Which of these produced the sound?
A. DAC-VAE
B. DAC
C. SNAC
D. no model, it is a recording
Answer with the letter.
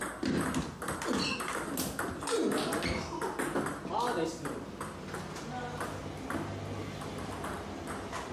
D